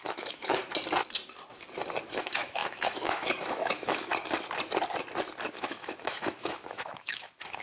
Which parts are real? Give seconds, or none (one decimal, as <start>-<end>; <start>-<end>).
0.6-2.2; 4.1-5.5